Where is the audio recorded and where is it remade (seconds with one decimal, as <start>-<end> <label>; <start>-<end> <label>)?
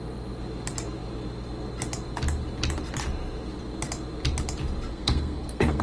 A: 0.0-4.9 recorded; 4.9-5.8 remade